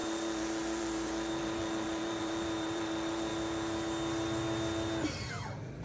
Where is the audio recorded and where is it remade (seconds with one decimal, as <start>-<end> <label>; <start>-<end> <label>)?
0.0-3.3 remade; 3.3-5.3 recorded; 5.3-5.8 remade